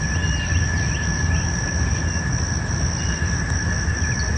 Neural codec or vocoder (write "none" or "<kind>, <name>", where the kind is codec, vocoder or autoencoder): none